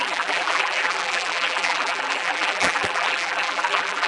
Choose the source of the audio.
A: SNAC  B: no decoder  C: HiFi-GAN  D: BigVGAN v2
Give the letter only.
D